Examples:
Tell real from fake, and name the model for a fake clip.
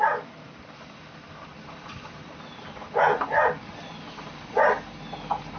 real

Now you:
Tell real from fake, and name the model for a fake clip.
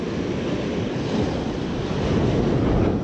real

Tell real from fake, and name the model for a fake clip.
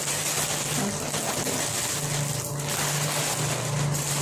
real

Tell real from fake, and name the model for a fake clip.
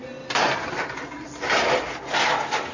real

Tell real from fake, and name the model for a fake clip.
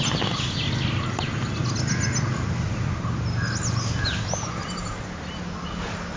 real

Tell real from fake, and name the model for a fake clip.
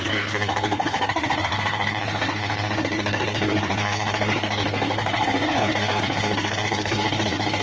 fake, codec, SNAC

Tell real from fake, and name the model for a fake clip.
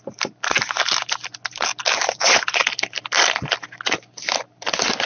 real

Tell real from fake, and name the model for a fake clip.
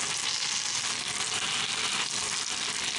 real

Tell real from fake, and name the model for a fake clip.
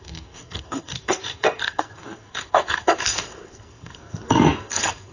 fake, codec, SNAC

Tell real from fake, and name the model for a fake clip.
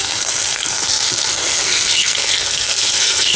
fake, codec, SNAC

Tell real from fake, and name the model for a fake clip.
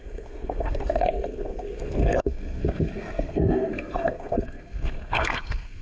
fake, codec, SNAC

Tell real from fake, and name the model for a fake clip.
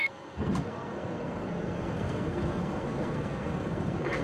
fake, codec, SNAC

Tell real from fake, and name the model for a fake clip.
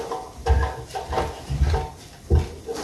real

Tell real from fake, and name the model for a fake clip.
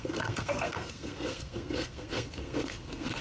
fake, codec, SNAC